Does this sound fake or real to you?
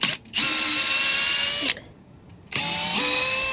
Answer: real